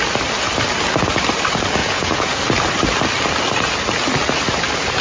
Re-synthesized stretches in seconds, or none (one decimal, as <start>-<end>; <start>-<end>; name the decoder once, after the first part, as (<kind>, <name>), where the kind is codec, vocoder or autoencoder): 1.8-2.4 (vocoder, Vocos)